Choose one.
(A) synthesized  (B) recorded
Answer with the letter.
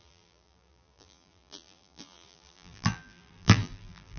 A